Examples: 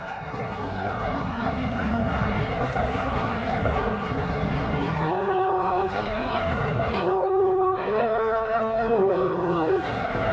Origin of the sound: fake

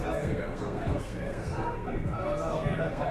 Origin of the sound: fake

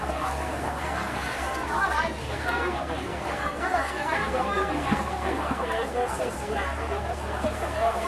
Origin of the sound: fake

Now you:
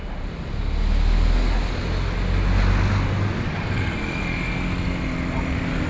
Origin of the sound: real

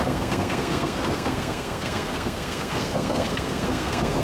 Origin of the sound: fake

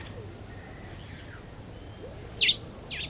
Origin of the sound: real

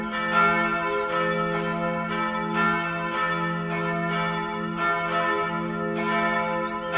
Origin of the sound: real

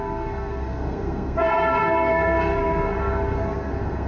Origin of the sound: fake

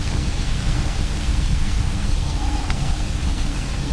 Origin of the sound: fake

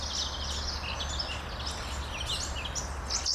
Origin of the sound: real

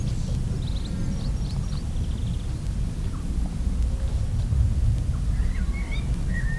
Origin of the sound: real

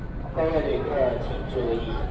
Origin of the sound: real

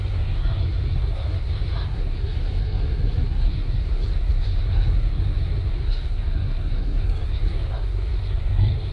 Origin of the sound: fake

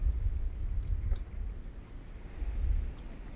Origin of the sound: real